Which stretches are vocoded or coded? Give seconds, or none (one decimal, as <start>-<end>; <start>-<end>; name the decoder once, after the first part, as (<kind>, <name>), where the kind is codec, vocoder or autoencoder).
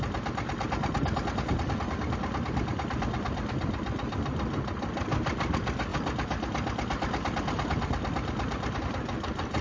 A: none